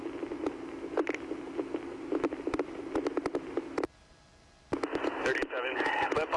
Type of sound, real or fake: real